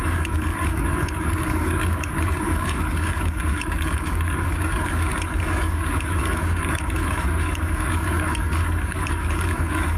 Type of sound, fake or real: fake